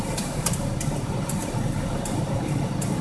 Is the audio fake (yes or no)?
no